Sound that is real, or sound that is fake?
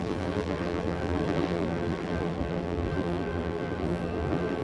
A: fake